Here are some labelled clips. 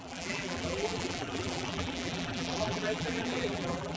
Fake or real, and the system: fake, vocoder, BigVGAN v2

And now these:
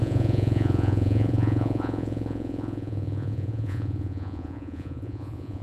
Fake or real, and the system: fake, vocoder, Vocos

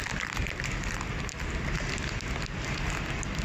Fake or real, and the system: real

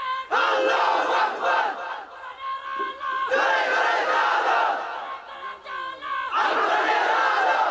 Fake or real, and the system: real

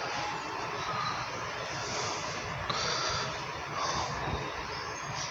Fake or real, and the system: real